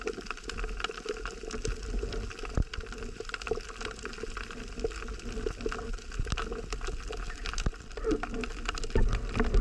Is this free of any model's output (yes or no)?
yes